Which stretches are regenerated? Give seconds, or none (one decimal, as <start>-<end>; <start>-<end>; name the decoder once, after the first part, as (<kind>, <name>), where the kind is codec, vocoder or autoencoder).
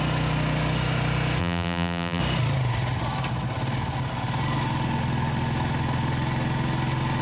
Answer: 1.4-2.2 (vocoder, BigVGAN v2)